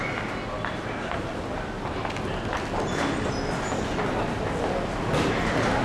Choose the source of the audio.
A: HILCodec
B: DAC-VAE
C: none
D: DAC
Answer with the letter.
C